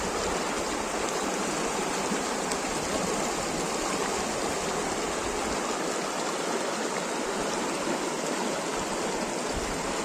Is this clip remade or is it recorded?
recorded